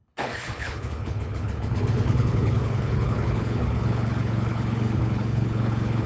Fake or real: fake